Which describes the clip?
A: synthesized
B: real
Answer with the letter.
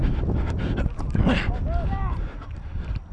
B